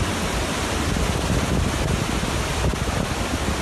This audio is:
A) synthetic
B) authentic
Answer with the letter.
B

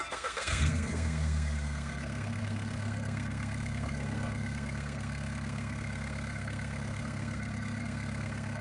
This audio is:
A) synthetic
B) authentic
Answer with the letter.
A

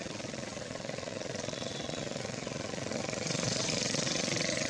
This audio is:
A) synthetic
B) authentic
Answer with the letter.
A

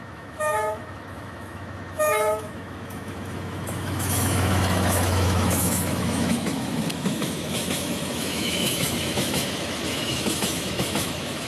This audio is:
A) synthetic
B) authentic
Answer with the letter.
A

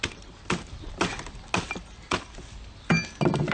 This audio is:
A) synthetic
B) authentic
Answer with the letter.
B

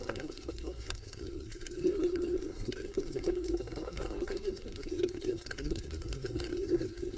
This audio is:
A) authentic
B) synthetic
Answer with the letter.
B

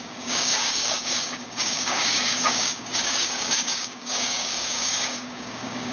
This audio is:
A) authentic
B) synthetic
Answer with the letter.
B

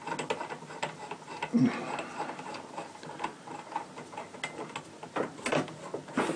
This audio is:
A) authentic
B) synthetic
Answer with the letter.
A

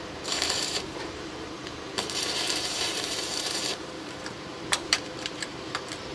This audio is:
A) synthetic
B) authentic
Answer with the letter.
A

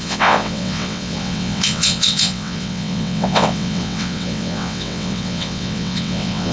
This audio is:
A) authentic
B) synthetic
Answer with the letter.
B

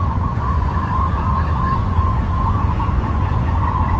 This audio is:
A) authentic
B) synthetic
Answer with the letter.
B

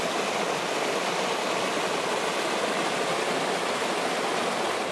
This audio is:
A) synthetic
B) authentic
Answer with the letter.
B